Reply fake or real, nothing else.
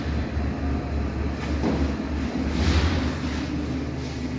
real